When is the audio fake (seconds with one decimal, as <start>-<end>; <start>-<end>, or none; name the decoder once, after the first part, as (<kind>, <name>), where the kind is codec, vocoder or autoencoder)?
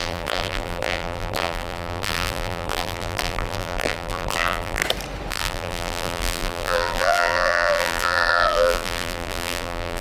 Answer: 0.0-4.8 (vocoder, BigVGAN v2); 5.3-10.0